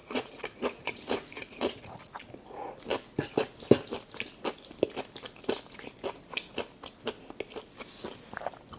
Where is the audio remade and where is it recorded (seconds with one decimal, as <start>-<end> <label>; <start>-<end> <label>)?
0.0-2.2 remade; 2.2-8.8 recorded